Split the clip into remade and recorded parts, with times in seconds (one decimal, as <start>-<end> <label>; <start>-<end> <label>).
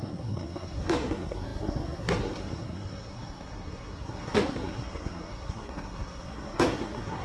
0.0-7.2 remade